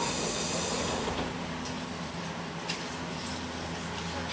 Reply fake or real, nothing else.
real